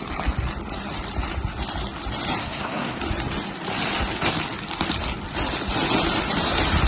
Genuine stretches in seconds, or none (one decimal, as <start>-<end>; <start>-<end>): 0.0-2.4; 3.0-6.9